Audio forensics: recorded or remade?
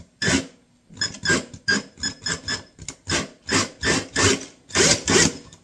recorded